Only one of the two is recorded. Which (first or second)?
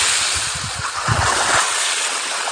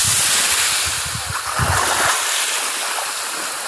second